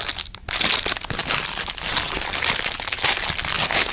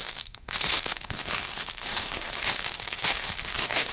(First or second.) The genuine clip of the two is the first